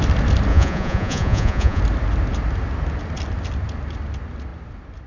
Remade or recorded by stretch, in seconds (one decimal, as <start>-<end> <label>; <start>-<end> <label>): 0.0-0.5 recorded; 0.5-1.8 remade; 1.8-5.1 recorded